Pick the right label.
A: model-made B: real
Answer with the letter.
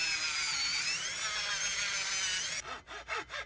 B